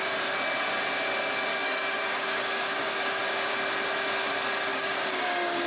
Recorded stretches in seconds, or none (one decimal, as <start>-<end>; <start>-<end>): 0.0-1.5; 3.2-4.7

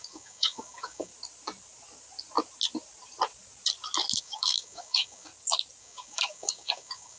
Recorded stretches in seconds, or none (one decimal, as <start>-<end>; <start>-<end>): 1.1-4.2; 5.3-5.8

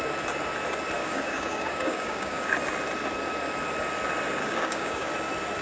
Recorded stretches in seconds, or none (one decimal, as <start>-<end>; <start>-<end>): 0.0-1.0; 2.5-4.4; 5.1-5.6

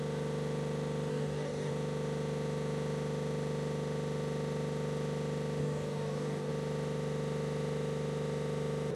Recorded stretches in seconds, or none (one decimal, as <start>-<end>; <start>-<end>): 0.0-1.1; 1.7-5.6; 6.5-9.0